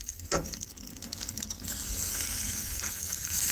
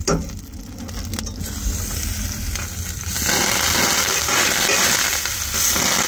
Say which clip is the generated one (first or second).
first